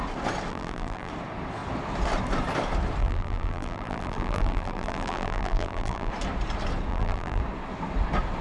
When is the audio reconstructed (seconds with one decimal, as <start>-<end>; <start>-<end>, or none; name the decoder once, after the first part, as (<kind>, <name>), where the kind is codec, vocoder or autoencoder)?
0.5-1.1 (vocoder, BigVGAN v2); 3.0-6.1; 6.9-7.4